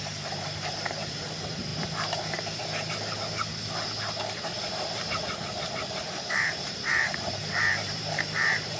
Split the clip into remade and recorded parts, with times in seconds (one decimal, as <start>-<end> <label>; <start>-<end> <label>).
0.0-1.7 remade; 1.7-6.3 recorded; 6.3-8.8 remade